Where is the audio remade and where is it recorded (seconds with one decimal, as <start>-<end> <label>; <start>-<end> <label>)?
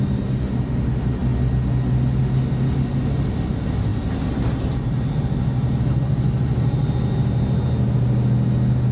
0.0-8.9 recorded